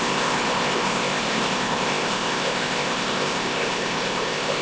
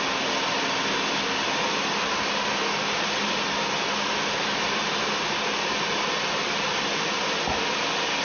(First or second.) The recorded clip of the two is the second